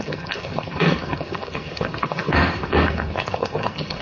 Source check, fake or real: fake